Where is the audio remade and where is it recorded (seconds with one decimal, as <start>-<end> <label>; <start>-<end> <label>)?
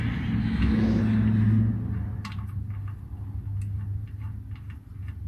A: 0.0-0.4 recorded; 0.4-1.0 remade; 1.0-5.3 recorded